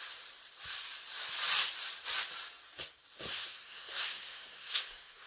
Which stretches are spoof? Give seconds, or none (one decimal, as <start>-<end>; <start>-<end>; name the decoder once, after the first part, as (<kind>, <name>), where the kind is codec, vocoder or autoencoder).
3.3-5.3 (codec, SNAC)